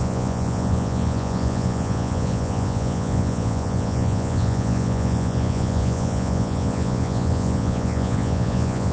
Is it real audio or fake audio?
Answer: fake